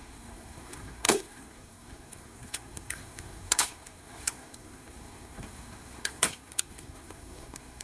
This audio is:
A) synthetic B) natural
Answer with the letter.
A